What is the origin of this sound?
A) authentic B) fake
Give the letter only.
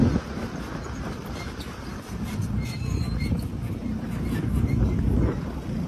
B